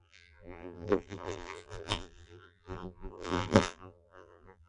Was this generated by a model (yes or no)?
yes